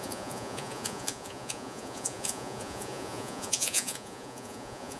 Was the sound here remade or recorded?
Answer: remade